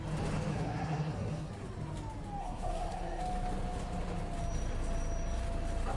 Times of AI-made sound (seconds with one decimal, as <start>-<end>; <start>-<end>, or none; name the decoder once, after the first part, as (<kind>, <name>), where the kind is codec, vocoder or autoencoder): 0.5-1.5 (codec, SNAC); 2.4-3.2